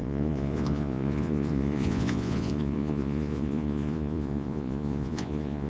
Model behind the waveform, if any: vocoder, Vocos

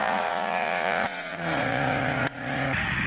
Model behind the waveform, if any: vocoder, Vocos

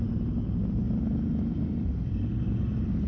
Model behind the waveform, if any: none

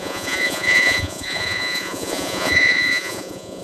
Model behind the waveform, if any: vocoder, Vocos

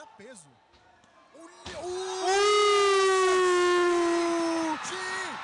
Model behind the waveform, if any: none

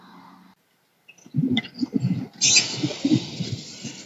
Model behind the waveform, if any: none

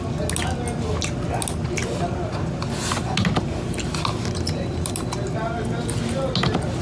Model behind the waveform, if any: none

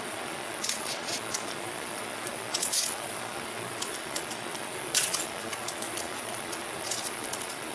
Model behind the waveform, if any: vocoder, Vocos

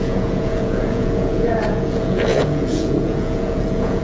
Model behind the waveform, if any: vocoder, Vocos